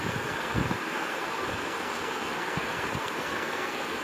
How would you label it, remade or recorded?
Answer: remade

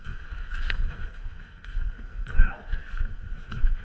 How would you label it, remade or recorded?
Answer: remade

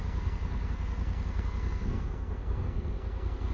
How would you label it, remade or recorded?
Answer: remade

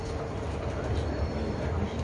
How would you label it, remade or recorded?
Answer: recorded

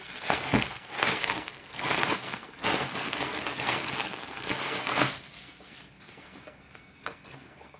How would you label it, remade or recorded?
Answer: remade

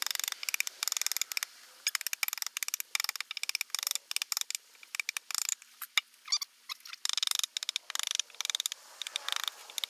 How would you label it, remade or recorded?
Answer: recorded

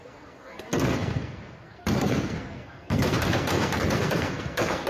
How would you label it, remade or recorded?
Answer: remade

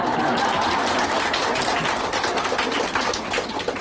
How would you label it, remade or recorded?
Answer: recorded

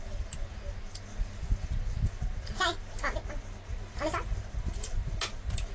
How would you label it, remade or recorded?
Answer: recorded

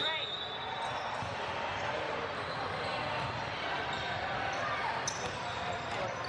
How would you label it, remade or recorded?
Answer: recorded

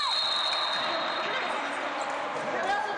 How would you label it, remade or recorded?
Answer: recorded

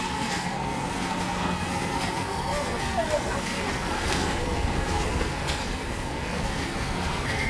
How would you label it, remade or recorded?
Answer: remade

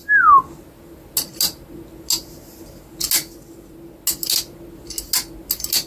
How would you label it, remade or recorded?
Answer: recorded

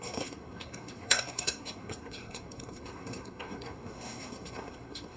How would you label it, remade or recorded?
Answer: remade